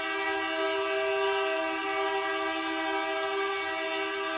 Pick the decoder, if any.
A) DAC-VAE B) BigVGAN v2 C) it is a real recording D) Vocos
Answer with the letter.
C